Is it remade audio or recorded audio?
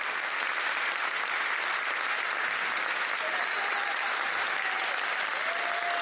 recorded